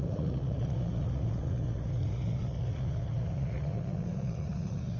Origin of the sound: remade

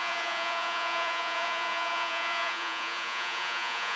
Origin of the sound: remade